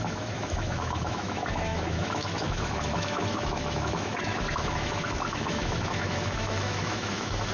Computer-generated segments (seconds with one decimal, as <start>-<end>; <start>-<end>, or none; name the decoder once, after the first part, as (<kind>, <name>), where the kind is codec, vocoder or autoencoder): 0.0-7.5 (autoencoder, DAC-VAE)